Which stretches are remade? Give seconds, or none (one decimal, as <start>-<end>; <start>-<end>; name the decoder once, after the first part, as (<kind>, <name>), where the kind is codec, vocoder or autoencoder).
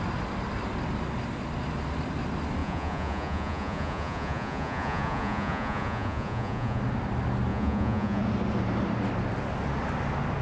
2.6-6.8 (vocoder, Vocos); 7.5-8.2